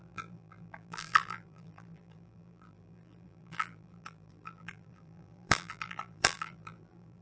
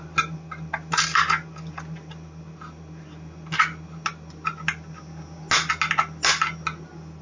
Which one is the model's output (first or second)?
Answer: first